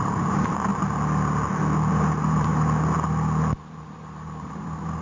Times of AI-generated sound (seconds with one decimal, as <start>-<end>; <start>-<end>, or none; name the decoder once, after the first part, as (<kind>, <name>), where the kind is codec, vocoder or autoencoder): 0.0-0.7 (vocoder, BigVGAN v2); 1.9-2.5; 3.6-5.0